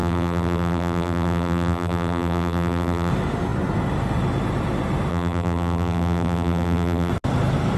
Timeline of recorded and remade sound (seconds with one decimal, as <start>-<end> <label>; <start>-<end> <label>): 0.0-3.1 remade; 3.1-5.1 recorded; 5.1-7.1 remade; 7.1-7.8 recorded